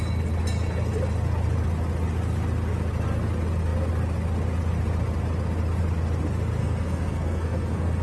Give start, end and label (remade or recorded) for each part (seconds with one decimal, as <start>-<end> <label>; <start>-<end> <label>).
0.0-6.6 recorded; 6.6-8.0 remade